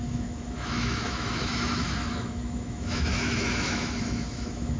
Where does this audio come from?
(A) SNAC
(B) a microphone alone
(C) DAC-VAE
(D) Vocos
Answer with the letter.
C